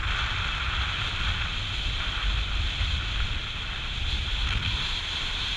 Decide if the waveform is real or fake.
real